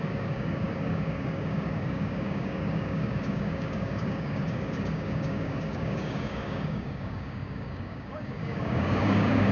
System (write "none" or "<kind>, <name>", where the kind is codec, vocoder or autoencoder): codec, DAC